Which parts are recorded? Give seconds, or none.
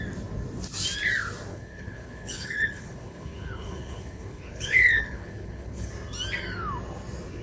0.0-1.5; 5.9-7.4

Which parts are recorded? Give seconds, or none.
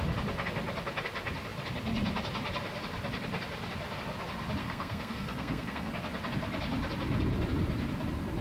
0.0-4.6; 5.9-8.4